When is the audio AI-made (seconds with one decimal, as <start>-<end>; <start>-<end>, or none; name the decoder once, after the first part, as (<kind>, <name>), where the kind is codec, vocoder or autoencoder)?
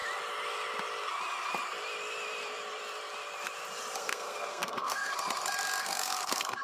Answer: 4.0-5.1 (codec, SNAC); 5.8-6.6